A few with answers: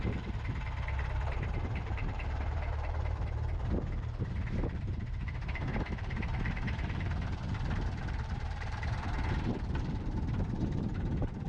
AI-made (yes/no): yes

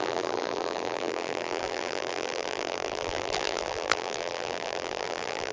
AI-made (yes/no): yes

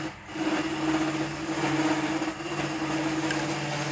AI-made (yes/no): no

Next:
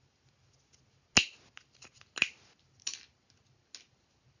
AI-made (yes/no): no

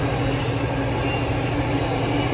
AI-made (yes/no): no